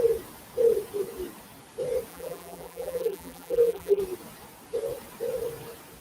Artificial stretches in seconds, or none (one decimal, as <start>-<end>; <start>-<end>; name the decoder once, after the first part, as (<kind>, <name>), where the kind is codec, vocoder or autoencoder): 2.1-4.0 (vocoder, BigVGAN v2)